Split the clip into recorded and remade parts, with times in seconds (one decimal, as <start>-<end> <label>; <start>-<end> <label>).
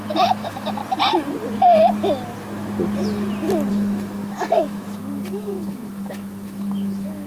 0.0-0.8 remade; 0.8-3.7 recorded; 3.7-7.3 remade